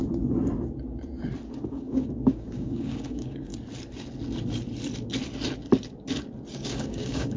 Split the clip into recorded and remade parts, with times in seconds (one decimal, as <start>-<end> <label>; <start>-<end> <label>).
0.0-1.7 recorded; 1.7-3.5 remade; 3.5-6.5 recorded; 6.5-7.4 remade